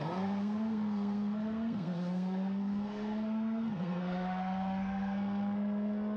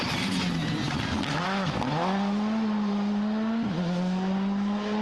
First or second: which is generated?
first